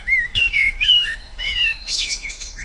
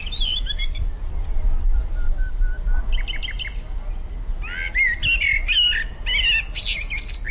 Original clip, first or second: second